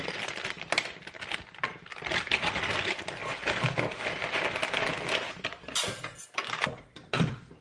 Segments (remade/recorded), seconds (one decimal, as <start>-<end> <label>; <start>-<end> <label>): 0.0-3.2 remade; 3.2-6.4 recorded; 6.4-7.6 remade

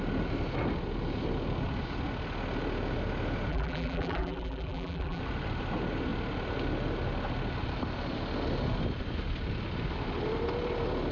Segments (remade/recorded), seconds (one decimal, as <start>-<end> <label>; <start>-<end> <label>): 0.0-3.5 recorded; 3.5-5.2 remade; 5.2-11.1 recorded